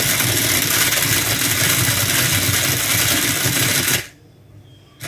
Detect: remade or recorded recorded